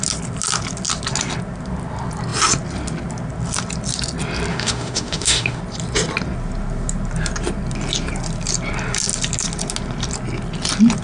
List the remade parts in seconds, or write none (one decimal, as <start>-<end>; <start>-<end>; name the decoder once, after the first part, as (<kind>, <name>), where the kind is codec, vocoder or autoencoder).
4.5-5.6 (autoencoder, DAC-VAE)